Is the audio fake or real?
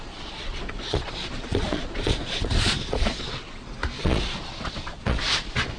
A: fake